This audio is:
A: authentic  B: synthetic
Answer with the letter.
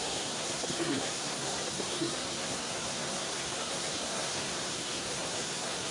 B